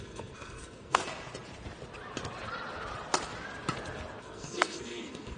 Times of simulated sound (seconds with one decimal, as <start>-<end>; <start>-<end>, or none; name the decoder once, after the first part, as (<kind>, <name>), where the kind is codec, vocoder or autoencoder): 0.0-1.0 (codec, SNAC); 4.2-5.4